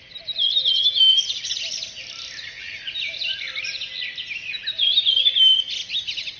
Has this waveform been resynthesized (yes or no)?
no